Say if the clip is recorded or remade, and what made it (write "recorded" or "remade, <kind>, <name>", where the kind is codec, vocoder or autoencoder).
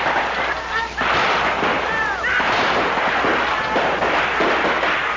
recorded